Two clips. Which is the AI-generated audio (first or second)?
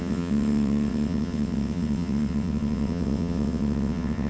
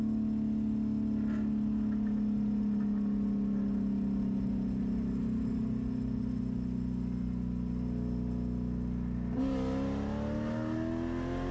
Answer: first